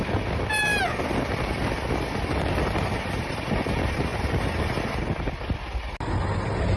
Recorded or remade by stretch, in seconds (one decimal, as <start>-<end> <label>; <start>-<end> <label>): 0.0-6.8 recorded